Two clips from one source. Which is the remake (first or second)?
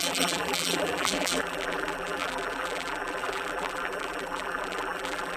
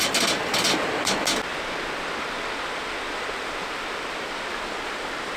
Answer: first